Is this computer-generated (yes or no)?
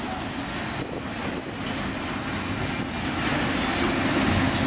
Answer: no